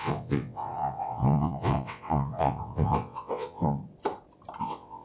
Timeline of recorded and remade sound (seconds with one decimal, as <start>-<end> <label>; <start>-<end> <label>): 0.0-3.8 remade; 3.8-4.6 recorded; 4.6-5.0 remade